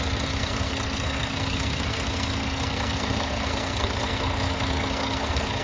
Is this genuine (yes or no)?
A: no